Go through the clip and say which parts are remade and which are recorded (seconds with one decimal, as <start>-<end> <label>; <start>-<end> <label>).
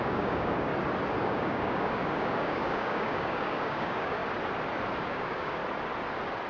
0.0-0.7 remade; 0.7-1.2 recorded; 1.2-4.2 remade; 4.2-5.0 recorded; 5.0-5.6 remade; 5.6-6.5 recorded